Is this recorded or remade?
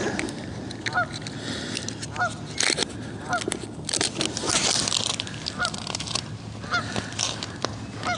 recorded